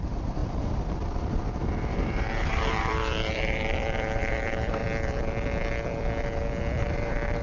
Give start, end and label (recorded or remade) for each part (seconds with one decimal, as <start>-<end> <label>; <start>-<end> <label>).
0.0-4.8 remade; 4.8-6.8 recorded; 6.8-7.4 remade